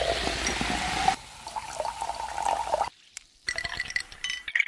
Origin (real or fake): real